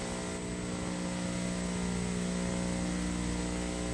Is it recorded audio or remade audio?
recorded